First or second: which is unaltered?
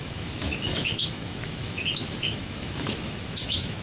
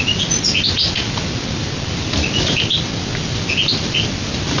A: second